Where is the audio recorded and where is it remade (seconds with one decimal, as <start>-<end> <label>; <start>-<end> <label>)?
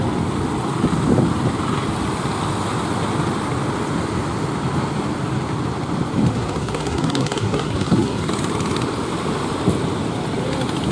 0.0-6.3 recorded; 6.3-8.3 remade; 8.3-10.9 recorded